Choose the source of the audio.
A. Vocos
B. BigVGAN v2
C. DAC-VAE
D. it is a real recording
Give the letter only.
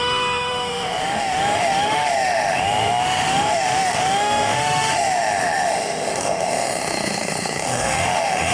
C